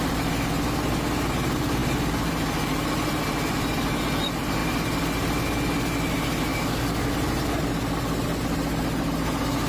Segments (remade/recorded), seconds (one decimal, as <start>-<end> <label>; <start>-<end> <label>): 0.0-6.5 recorded; 6.5-7.1 remade; 7.1-9.7 recorded